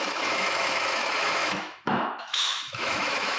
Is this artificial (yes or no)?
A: yes